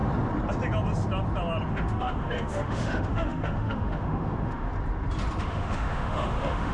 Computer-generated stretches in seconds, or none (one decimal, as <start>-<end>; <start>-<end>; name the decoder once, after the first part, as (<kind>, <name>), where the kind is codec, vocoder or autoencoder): 1.7-4.7 (autoencoder, DAC-VAE); 5.4-6.7